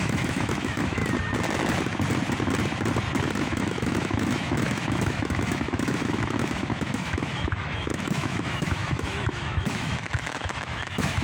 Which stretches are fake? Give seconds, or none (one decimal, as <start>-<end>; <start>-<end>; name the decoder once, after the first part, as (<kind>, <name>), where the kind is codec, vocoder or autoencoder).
0.0-1.0 (autoencoder, DAC-VAE); 3.4-11.2